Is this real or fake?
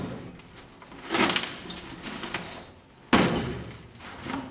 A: real